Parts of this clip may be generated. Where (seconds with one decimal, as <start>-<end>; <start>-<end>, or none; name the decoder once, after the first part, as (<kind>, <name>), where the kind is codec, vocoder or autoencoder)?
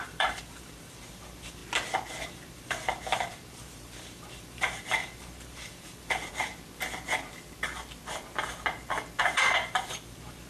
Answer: 0.0-1.6 (vocoder, BigVGAN v2); 2.3-6.5; 9.2-10.5